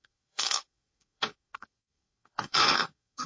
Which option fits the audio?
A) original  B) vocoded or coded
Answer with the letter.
B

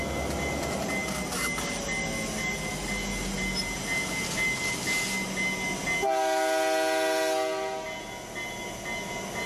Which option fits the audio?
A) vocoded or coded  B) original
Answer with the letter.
B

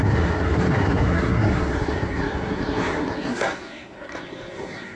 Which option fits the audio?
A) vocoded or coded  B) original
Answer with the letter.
A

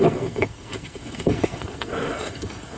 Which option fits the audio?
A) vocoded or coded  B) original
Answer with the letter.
A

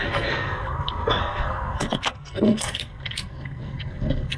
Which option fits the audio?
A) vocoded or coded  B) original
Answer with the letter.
A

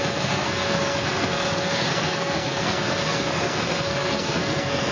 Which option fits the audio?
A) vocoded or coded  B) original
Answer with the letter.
A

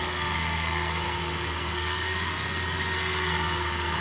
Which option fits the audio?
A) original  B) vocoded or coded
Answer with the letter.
B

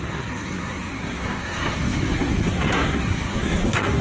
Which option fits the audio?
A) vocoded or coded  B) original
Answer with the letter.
A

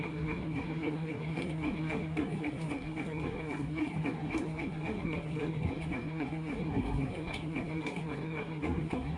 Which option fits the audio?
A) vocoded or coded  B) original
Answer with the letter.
A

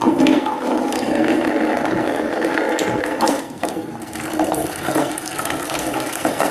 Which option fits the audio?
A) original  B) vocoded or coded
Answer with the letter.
B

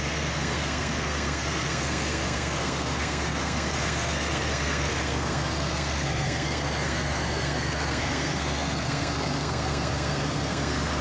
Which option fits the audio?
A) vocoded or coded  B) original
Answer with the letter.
A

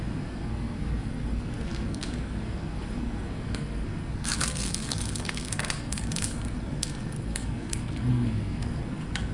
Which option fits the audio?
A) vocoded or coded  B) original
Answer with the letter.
A